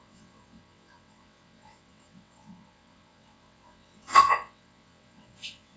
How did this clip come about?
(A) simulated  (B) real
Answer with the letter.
A